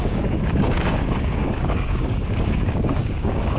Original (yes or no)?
no